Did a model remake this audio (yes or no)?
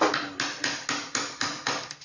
no